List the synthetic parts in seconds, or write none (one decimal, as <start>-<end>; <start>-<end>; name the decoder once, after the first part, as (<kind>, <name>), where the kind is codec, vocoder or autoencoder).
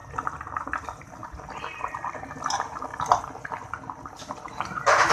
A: 1.2-2.0 (vocoder, BigVGAN v2); 2.9-5.1